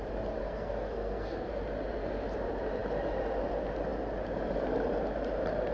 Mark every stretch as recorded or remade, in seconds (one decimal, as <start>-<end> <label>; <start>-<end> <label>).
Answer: 0.0-0.4 recorded; 0.4-1.5 remade; 1.5-5.7 recorded